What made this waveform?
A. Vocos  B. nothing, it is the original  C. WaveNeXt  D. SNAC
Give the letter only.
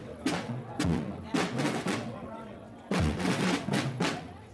C